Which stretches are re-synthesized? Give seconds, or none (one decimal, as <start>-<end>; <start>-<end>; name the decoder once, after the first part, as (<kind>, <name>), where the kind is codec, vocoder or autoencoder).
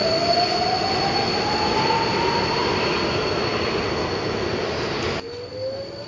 none